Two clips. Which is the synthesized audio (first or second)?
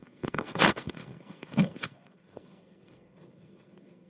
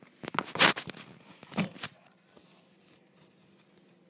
first